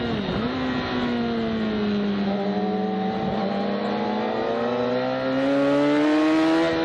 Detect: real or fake real